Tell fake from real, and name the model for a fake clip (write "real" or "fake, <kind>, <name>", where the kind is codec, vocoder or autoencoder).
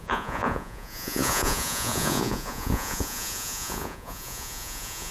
fake, vocoder, Vocos